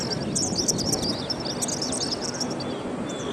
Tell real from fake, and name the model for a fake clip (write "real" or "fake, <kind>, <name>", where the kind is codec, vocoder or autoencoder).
real